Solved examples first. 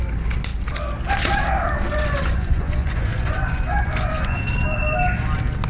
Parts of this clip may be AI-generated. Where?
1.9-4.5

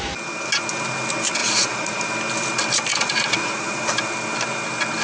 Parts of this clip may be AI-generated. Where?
1.4-2.0; 2.9-3.8

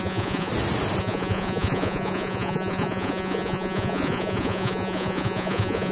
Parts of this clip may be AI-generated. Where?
0.0-0.5; 1.0-5.9

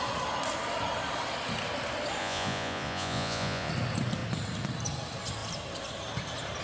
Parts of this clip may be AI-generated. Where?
2.2-3.7

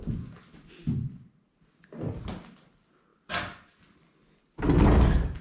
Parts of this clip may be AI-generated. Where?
none